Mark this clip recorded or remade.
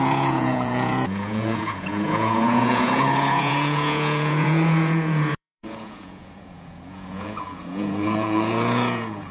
remade